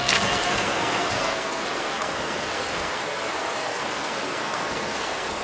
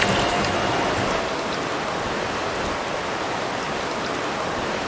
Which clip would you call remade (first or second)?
first